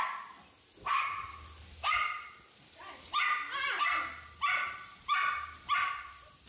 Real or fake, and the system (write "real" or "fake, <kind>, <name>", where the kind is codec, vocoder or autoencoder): real